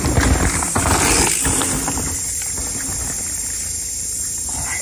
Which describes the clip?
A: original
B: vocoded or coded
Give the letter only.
A